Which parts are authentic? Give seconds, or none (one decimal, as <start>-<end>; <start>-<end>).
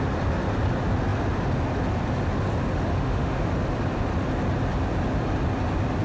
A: 0.0-2.9; 3.5-6.0